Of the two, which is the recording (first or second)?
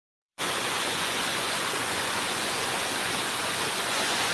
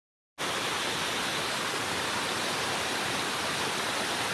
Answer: second